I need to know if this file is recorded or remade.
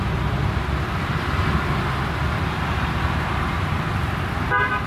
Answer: recorded